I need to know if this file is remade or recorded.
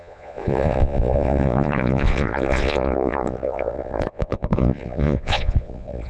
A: remade